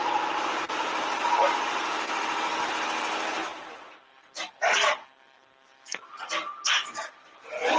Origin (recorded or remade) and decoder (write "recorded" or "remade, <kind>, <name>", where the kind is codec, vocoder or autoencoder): recorded